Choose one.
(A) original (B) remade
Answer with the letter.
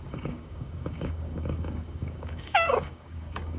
B